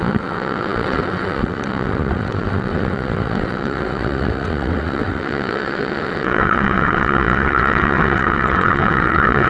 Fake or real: fake